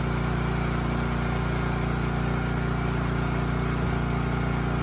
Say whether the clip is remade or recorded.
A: recorded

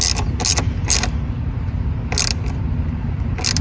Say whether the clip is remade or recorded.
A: recorded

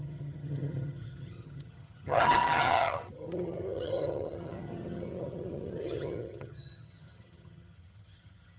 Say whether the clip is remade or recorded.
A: remade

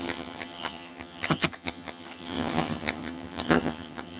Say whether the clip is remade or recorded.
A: remade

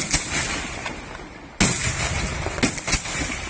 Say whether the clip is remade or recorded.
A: recorded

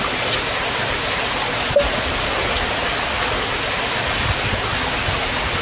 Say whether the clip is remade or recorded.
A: recorded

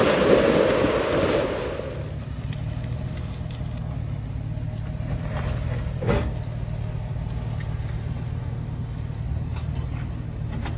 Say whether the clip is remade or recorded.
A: recorded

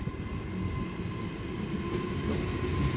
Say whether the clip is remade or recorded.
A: recorded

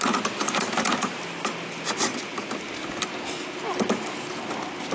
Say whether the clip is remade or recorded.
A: recorded